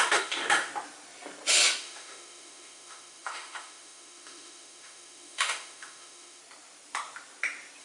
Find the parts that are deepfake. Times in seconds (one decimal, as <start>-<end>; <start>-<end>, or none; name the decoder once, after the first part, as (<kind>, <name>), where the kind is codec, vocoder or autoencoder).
0.0-0.7 (autoencoder, DAC-VAE); 1.8-6.4